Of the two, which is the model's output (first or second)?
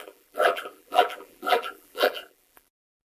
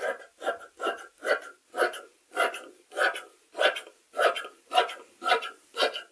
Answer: first